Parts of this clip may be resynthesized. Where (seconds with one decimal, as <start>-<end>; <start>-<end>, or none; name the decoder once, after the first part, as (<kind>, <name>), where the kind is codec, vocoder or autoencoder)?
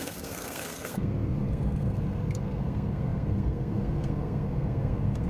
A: 0.0-5.3 (codec, SNAC)